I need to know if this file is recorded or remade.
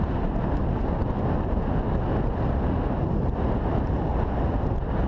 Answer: recorded